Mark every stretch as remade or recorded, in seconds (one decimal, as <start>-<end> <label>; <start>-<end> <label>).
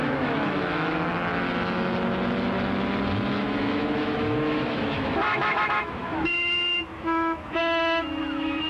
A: 0.0-1.1 remade; 1.1-3.4 recorded; 3.4-8.7 remade